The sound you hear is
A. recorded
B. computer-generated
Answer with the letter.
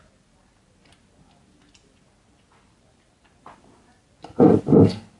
A